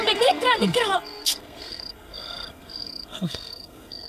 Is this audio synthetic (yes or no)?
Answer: yes